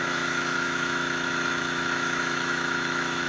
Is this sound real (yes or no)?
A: no